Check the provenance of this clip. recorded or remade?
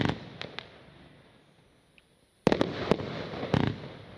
recorded